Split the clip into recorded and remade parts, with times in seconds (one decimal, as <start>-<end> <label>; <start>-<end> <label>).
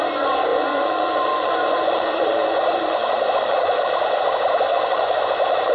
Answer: 0.0-0.5 recorded; 0.5-3.9 remade; 3.9-4.7 recorded; 4.7-5.7 remade